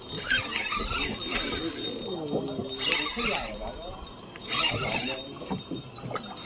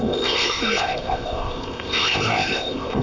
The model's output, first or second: second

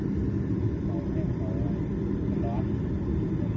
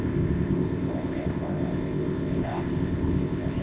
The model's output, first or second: second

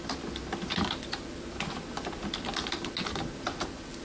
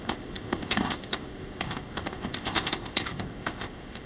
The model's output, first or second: second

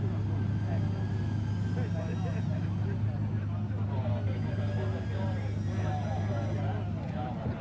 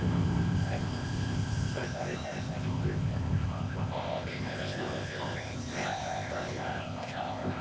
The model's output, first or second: second